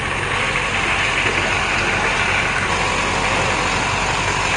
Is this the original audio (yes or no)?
yes